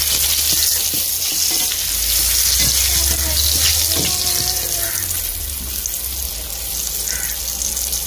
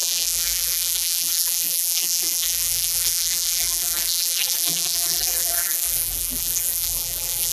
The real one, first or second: first